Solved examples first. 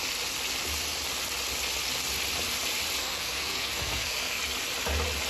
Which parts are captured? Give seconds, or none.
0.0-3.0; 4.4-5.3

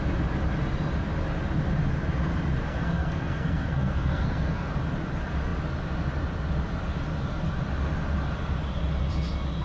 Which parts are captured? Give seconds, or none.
0.0-2.6; 4.7-9.6

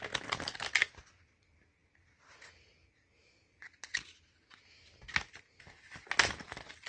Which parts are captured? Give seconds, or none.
0.0-6.9

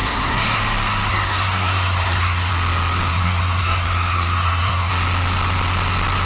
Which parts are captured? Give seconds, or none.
0.6-1.1; 2.5-3.1; 4.9-6.3

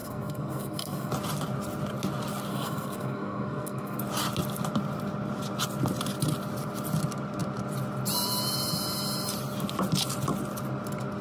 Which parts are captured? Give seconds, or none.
1.1-2.5; 4.0-11.2

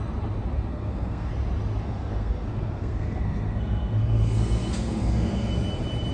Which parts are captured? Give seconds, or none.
0.0-0.7; 1.3-1.8; 5.5-6.1